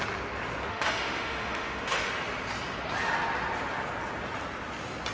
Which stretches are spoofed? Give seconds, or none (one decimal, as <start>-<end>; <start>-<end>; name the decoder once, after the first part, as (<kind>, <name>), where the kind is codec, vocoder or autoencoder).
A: 0.7-2.1 (autoencoder, DAC-VAE)